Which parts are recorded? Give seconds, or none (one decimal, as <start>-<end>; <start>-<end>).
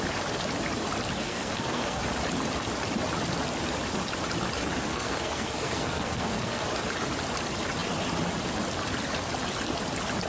0.0-1.2; 2.0-4.9; 6.6-10.3